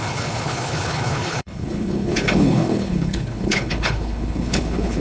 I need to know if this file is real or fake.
fake